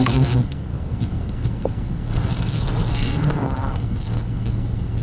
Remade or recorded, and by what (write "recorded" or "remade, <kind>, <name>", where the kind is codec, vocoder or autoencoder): remade, codec, SNAC